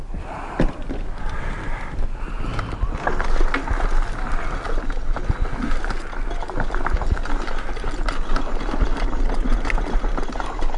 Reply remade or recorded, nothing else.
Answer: recorded